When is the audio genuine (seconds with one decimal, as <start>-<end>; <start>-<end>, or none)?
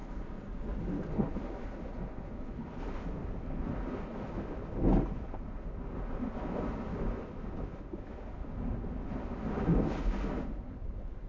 0.0-11.3